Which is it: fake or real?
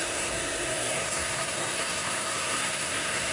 fake